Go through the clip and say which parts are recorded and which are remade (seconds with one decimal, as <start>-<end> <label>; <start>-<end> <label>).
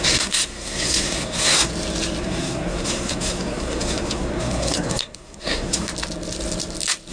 0.0-1.7 remade; 1.7-2.2 recorded; 2.2-5.9 remade; 5.9-7.1 recorded